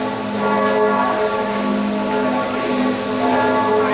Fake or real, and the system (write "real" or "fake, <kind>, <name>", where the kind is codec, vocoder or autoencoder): real